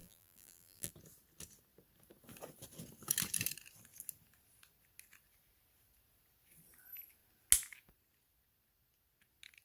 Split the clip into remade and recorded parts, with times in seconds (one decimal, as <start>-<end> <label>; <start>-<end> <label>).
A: 0.0-0.9 remade; 0.9-9.6 recorded